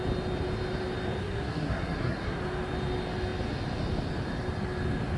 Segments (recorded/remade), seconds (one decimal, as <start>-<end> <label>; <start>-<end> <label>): 0.0-1.2 recorded; 1.2-2.4 remade; 2.4-5.2 recorded